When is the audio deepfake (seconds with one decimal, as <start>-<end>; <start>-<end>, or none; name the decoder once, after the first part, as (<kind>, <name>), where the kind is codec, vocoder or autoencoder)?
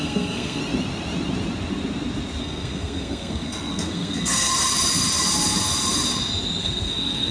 0.0-0.6 (codec, SNAC); 2.4-4.5; 6.6-7.3